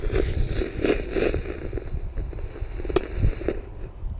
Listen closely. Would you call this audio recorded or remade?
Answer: recorded